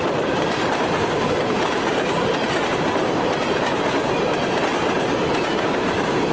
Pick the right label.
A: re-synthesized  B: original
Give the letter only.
A